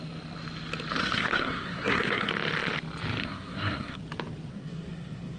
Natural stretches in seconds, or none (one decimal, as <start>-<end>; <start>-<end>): 0.0-1.0; 2.3-3.2; 4.0-4.5